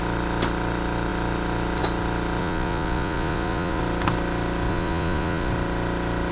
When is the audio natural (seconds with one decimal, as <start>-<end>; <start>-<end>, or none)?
0.0-2.4; 3.8-4.7; 5.5-6.3

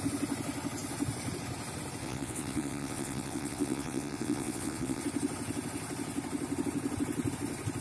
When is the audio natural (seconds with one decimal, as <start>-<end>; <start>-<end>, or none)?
0.0-2.0; 5.0-7.8

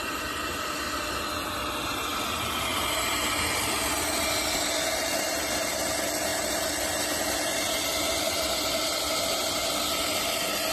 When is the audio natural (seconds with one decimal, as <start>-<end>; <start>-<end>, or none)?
0.0-10.7

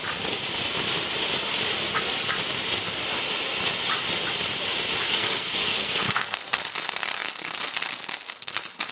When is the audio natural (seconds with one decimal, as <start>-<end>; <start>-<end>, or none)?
0.0-5.1

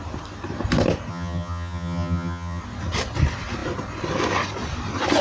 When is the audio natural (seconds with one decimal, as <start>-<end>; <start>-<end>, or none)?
0.0-1.1; 2.6-5.2

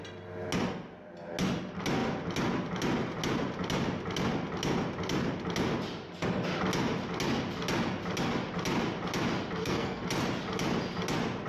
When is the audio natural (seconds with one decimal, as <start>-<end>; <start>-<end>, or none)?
0.0-9.6; 10.1-11.5